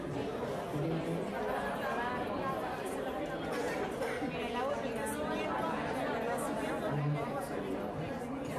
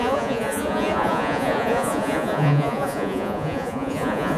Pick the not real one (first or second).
second